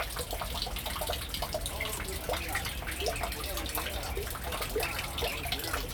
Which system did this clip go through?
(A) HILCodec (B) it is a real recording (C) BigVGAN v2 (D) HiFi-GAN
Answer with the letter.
B